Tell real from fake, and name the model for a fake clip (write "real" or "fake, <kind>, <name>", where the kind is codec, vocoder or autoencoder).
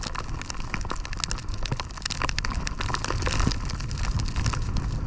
real